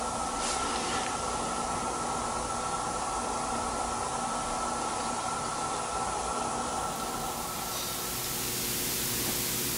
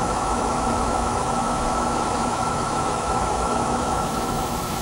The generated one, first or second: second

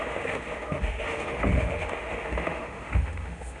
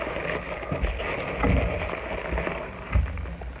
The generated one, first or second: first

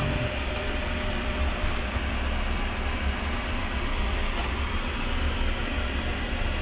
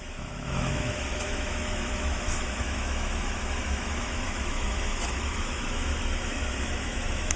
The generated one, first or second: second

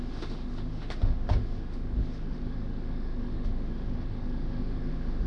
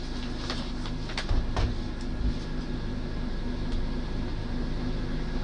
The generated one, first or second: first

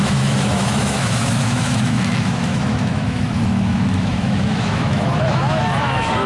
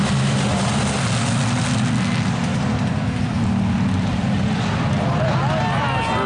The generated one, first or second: first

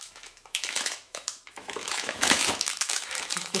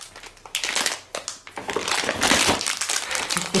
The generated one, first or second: first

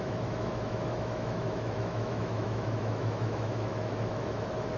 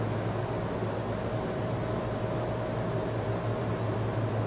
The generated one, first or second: first